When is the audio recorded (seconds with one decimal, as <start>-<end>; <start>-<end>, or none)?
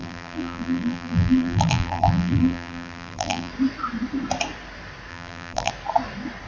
3.5-5.1; 5.7-6.5